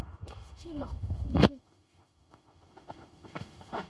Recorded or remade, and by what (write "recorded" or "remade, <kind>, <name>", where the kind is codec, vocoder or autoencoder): remade, autoencoder, DAC-VAE